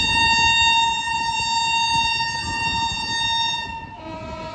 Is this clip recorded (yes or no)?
yes